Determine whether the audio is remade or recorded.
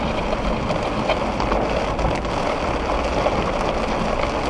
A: recorded